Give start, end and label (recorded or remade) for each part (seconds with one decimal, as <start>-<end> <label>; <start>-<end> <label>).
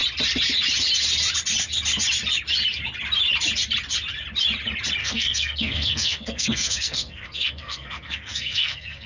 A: 0.0-5.0 recorded; 5.0-9.1 remade